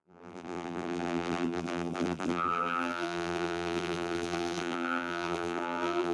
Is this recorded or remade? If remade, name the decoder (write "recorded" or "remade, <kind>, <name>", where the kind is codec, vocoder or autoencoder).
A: remade, vocoder, BigVGAN v2